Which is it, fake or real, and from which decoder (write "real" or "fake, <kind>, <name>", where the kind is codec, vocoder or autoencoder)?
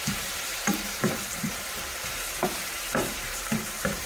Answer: fake, vocoder, BigVGAN v2